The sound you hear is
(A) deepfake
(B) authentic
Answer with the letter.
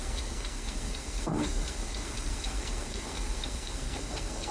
A